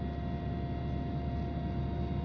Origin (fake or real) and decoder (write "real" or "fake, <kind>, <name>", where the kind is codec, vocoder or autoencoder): real